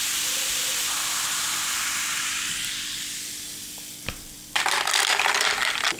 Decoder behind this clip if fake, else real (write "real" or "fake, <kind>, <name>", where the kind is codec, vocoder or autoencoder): fake, vocoder, BigVGAN v2